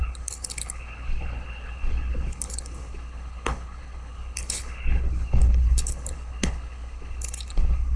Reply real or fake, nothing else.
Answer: fake